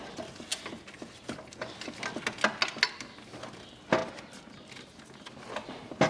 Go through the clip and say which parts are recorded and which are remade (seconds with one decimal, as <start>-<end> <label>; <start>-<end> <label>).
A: 0.0-6.1 recorded